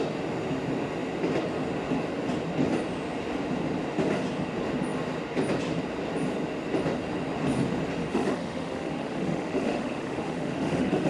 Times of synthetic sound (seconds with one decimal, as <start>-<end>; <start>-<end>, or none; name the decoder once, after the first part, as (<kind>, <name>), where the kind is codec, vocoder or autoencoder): 8.0-11.1 (autoencoder, DAC-VAE)